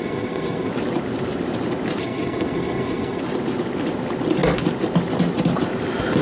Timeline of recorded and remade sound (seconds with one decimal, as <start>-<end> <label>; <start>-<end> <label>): 0.0-0.7 remade; 0.7-2.0 recorded; 2.0-3.2 remade; 3.2-6.2 recorded